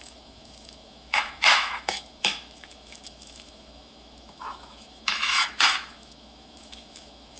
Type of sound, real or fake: fake